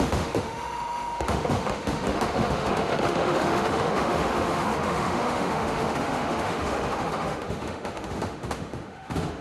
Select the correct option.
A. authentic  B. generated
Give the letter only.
B